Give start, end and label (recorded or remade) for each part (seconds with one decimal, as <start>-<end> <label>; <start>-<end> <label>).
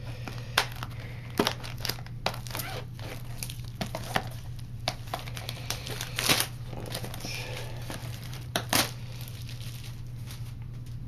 0.0-5.1 recorded; 5.1-5.9 remade; 5.9-8.0 recorded; 8.0-8.8 remade; 8.8-11.1 recorded